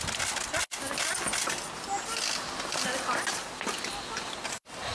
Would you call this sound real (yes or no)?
yes